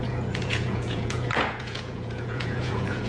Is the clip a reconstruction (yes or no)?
yes